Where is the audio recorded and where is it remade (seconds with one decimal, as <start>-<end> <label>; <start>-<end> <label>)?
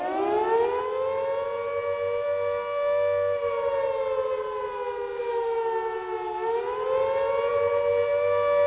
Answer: 0.0-8.7 recorded